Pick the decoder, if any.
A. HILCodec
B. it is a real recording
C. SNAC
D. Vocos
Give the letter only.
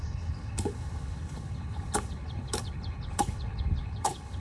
A